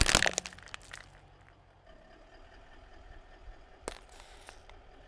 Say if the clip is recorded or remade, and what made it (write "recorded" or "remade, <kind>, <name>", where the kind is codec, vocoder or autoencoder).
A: recorded